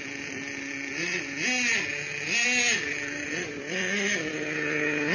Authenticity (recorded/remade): recorded